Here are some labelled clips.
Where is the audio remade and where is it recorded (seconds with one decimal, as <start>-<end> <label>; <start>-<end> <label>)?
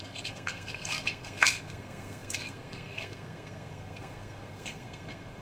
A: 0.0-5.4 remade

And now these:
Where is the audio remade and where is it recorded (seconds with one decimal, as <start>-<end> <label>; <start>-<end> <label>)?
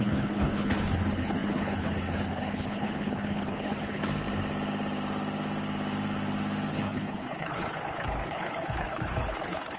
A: 0.0-4.0 remade; 4.0-6.7 recorded; 6.7-9.8 remade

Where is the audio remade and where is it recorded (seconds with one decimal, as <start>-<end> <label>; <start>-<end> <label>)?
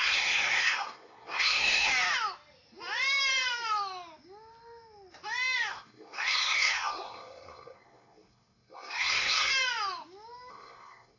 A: 0.0-1.9 remade; 1.9-5.7 recorded; 5.7-9.5 remade; 9.5-10.5 recorded; 10.5-11.2 remade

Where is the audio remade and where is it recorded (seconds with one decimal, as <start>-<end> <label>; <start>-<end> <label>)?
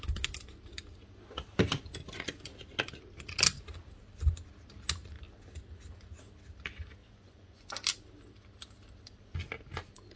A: 0.0-7.0 recorded; 7.0-7.7 remade; 7.7-10.2 recorded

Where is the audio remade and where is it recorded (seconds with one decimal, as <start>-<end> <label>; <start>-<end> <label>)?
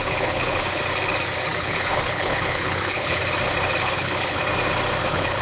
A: 0.0-0.8 remade; 0.8-1.6 recorded; 1.6-3.2 remade; 3.2-3.8 recorded; 3.8-4.4 remade; 4.4-5.0 recorded; 5.0-5.4 remade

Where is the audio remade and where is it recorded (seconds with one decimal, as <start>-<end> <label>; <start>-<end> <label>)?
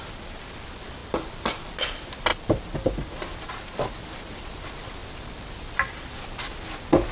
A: 0.0-1.0 recorded; 1.0-1.6 remade; 1.6-2.3 recorded; 2.3-3.9 remade; 3.9-5.0 recorded; 5.0-6.1 remade; 6.1-7.1 recorded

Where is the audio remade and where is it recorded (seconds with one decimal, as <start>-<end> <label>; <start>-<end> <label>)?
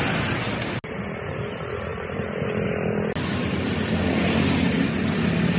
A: 0.0-5.6 recorded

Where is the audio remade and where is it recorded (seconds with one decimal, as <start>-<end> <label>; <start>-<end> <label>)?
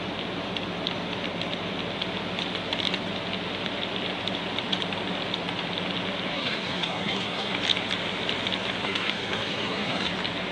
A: 0.0-6.3 recorded; 6.3-7.5 remade; 7.5-8.8 recorded; 8.8-10.1 remade; 10.1-10.5 recorded